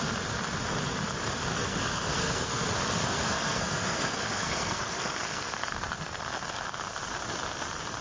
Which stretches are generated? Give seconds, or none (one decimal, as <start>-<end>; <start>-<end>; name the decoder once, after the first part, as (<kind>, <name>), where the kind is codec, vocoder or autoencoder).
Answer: 1.5-6.2 (codec, SNAC)